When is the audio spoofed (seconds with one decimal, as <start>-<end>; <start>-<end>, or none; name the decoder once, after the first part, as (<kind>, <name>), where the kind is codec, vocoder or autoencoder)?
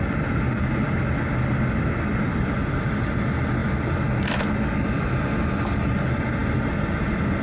none